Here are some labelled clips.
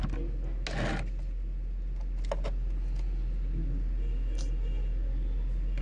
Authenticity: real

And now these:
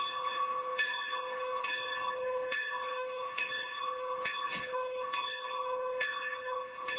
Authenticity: fake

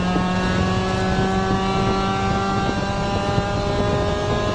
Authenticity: real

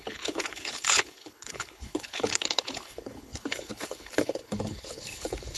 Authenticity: fake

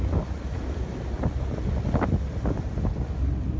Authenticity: real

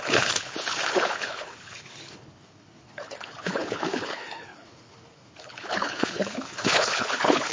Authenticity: fake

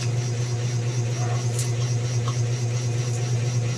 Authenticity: real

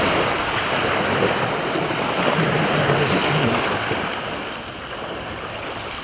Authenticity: real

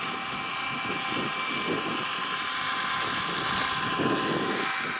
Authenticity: real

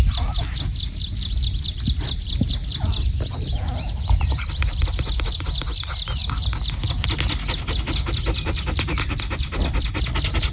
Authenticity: real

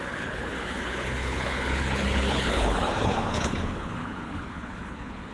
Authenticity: fake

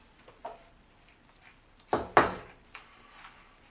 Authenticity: real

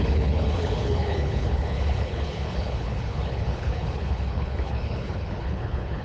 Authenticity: fake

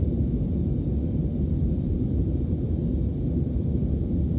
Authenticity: real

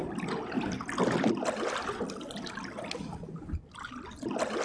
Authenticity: real